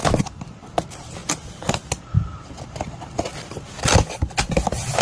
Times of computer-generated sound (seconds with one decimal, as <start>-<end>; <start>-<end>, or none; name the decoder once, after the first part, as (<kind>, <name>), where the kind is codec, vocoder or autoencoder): 0.0-0.5 (vocoder, BigVGAN v2)